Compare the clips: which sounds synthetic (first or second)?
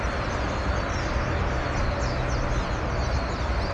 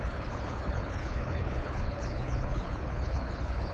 second